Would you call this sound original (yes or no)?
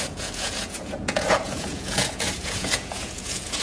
no